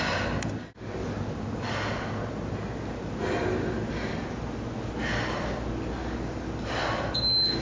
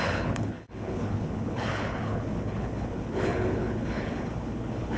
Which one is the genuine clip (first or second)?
first